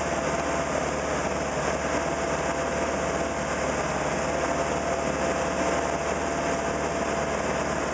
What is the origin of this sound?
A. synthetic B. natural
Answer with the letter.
B